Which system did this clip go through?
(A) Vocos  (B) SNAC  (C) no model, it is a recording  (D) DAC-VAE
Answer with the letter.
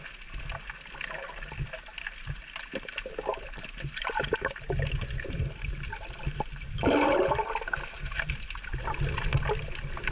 C